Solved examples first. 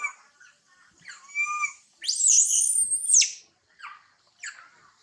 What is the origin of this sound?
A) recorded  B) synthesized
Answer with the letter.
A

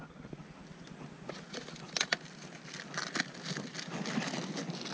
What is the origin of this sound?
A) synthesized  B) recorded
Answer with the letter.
B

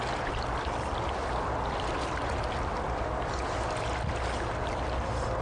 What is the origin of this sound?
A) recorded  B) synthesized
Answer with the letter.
A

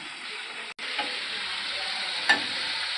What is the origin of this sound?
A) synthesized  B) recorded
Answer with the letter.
B